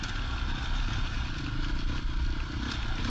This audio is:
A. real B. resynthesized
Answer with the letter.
A